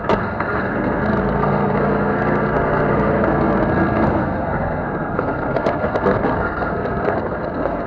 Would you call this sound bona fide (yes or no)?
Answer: no